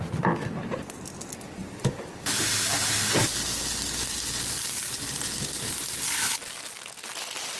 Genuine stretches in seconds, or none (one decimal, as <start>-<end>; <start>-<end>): 0.0-7.6